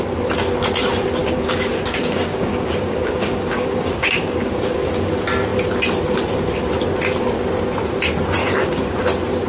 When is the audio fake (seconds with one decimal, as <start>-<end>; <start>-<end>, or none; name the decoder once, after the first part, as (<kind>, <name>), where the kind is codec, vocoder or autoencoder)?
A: 1.2-4.9 (codec, DAC); 8.4-9.0

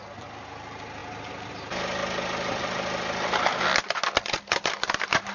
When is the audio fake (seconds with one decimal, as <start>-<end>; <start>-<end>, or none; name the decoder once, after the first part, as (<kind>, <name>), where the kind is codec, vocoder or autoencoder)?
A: none

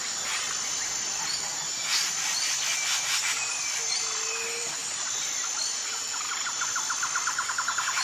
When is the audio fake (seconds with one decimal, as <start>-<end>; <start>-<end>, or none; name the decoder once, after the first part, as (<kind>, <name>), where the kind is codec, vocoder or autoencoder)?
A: none

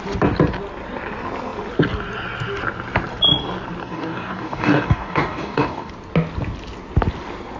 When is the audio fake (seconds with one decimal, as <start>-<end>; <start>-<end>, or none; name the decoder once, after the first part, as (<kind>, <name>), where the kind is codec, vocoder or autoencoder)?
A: 3.8-5.9 (codec, DAC)

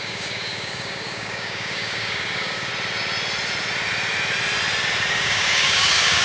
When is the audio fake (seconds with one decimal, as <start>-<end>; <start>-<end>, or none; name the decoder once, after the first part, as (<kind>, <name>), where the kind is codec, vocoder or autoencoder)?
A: 0.0-2.7 (codec, DAC); 5.1-6.2

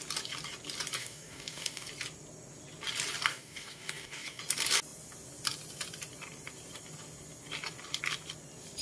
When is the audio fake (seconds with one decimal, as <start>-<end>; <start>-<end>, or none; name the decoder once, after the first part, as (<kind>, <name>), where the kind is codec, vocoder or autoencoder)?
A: 1.0-1.9 (codec, DAC); 3.3-4.4